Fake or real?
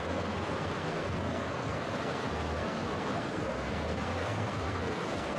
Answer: fake